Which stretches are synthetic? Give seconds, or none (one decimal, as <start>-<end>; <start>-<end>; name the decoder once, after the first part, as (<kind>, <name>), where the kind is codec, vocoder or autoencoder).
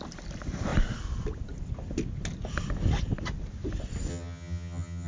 4.1-5.1 (vocoder, HiFi-GAN)